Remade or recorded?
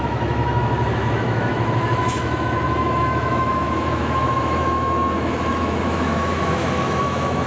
remade